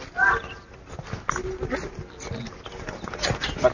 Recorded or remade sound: recorded